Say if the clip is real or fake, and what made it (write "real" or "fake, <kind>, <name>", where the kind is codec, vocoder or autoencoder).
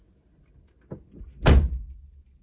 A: real